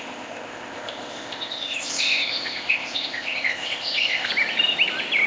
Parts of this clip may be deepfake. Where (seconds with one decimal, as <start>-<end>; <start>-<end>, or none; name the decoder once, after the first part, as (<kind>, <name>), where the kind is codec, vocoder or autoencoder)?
0.0-4.3 (codec, ZipCodec)